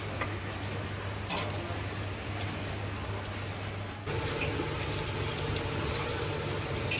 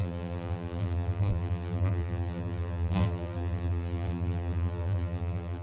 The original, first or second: first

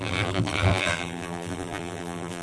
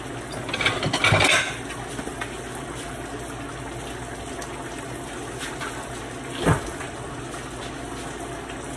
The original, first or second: second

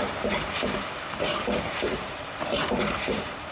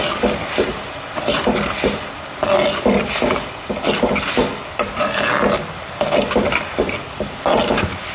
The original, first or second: second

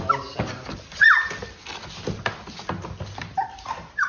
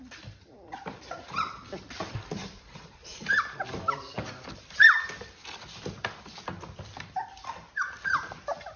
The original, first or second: first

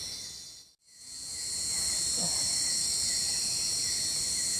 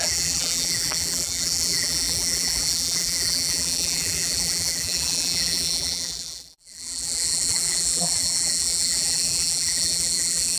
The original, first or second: first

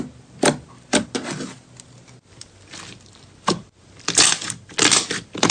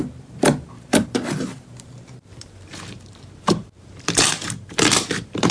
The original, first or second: first